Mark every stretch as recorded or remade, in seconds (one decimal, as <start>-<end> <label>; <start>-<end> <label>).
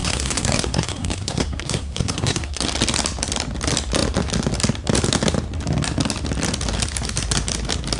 0.0-2.6 remade; 2.6-8.0 recorded